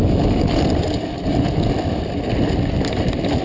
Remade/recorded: recorded